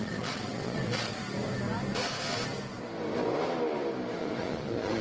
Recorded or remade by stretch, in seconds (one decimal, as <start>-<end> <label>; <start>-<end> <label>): 0.0-1.2 remade; 1.2-4.2 recorded; 4.2-5.0 remade